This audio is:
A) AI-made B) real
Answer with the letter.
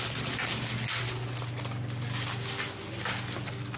B